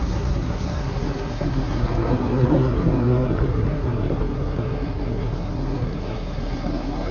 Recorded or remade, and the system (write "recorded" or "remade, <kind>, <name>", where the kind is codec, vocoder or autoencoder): remade, codec, SNAC